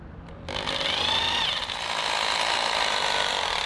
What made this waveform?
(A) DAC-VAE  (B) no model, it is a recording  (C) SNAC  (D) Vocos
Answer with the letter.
B